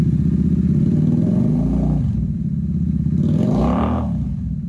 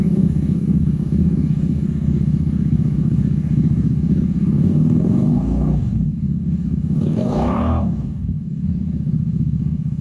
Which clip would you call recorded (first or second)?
first